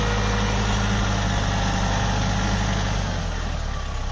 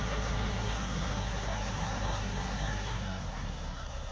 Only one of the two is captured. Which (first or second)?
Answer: first